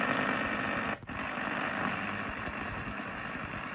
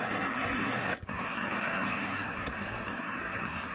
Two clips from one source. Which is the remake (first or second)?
second